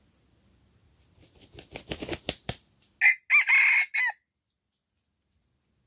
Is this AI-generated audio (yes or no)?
no